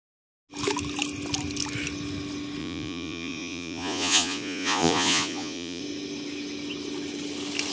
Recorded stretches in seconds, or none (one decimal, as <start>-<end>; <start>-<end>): 0.0-2.6; 5.8-7.7